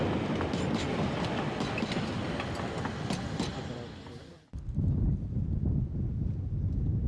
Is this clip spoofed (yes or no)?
no